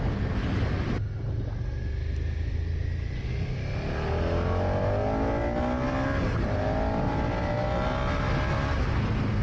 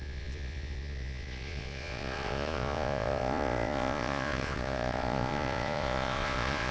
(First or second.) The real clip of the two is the first